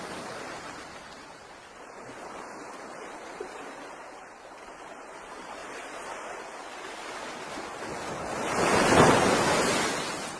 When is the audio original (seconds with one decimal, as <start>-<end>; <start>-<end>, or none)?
0.0-10.4